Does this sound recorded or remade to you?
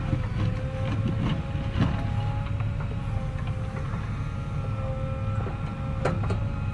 recorded